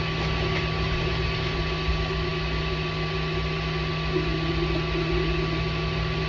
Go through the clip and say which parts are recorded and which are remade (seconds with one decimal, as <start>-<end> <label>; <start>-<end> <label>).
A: 0.0-6.3 recorded